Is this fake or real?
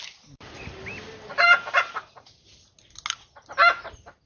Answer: real